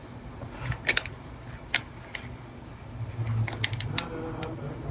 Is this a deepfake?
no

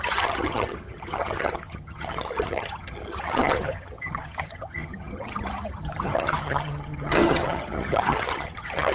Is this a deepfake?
yes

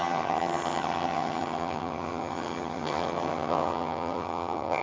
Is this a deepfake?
yes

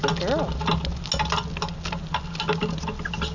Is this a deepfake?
no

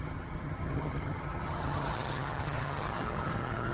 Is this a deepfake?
yes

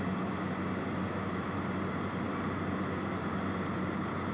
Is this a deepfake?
no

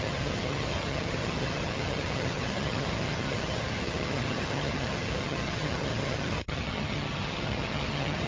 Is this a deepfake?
yes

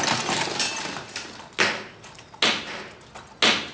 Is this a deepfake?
no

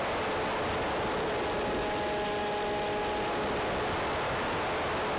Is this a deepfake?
no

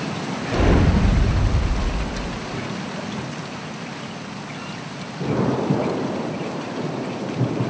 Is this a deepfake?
no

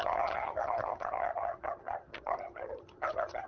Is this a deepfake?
yes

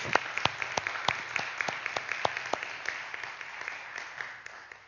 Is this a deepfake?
no